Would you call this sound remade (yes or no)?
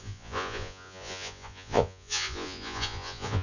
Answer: yes